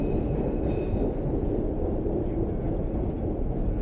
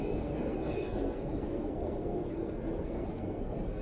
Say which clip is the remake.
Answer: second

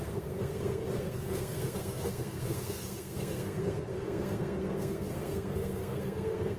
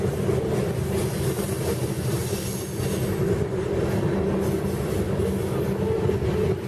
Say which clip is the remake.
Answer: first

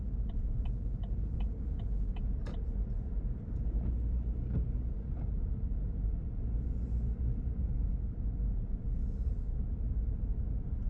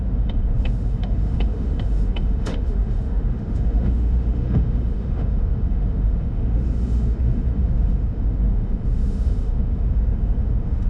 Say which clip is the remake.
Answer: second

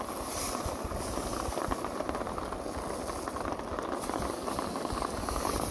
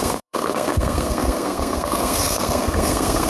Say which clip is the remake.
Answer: second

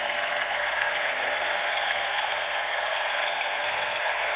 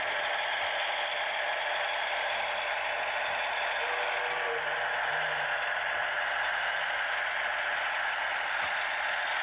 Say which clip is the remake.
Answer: first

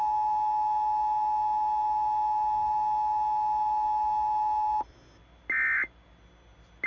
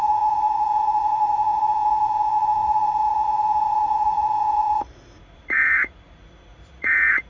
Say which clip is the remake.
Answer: second